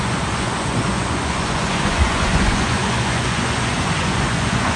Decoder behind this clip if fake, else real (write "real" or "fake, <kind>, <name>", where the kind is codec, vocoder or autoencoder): fake, vocoder, Vocos